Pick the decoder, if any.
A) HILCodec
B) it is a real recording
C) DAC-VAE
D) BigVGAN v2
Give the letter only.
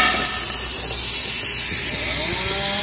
B